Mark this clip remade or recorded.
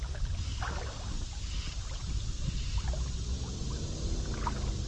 recorded